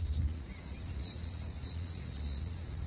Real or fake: fake